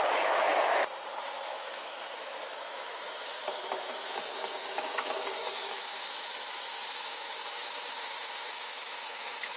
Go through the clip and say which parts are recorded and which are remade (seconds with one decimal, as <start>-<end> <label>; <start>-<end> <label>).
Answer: 0.0-0.5 remade; 0.5-1.2 recorded; 1.2-9.6 remade